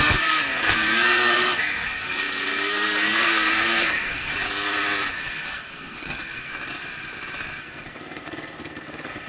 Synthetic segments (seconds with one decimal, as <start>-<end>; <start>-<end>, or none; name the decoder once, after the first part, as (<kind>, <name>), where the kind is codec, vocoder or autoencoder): 0.0-4.3 (codec, SNAC); 5.1-6.5; 7.6-9.3